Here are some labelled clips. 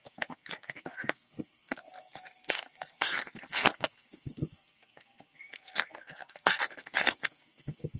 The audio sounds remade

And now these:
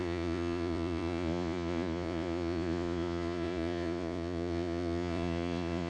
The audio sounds remade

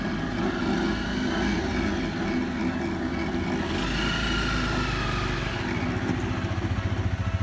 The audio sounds recorded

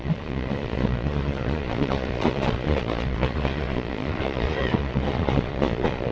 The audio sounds remade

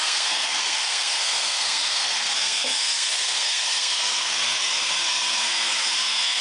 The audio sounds remade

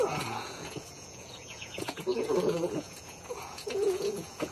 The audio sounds remade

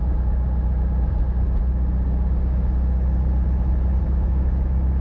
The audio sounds recorded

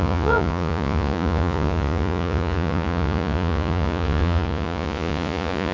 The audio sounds remade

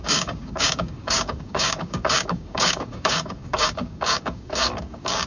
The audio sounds remade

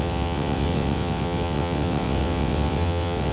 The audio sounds remade